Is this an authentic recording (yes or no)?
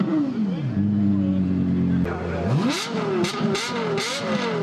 yes